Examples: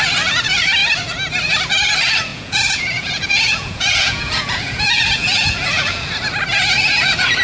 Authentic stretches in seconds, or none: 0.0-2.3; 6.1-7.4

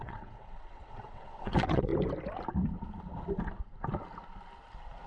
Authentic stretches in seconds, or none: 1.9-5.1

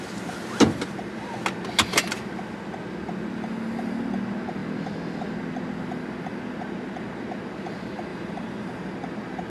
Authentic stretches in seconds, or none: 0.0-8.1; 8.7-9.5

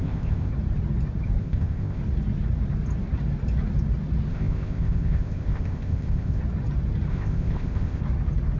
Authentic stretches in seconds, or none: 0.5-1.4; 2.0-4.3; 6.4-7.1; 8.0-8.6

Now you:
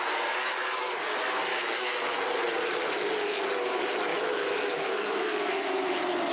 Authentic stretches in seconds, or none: 0.0-1.5; 2.0-4.1; 5.5-6.3

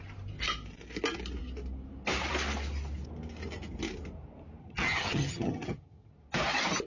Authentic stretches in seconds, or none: 0.0-4.6; 6.1-6.9